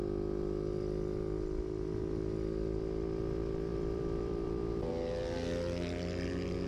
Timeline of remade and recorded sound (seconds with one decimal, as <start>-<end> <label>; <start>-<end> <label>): 0.0-3.7 recorded; 3.7-4.9 remade; 4.9-6.7 recorded